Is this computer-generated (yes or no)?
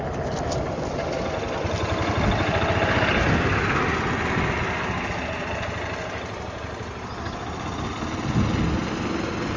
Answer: no